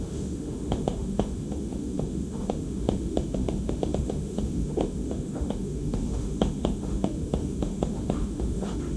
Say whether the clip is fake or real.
fake